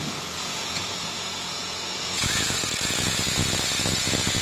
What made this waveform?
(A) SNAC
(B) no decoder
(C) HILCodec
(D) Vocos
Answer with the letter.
D